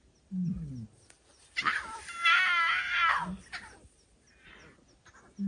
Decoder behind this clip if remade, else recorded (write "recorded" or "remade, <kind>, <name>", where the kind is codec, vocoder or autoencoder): recorded